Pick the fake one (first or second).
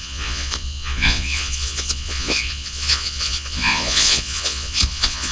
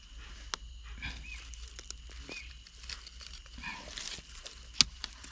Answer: first